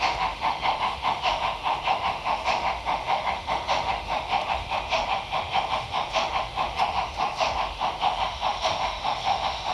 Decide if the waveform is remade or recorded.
remade